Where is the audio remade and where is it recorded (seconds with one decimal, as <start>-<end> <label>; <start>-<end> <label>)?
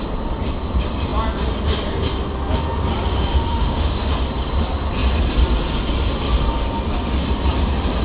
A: 0.0-3.3 recorded; 3.3-4.1 remade; 4.1-8.0 recorded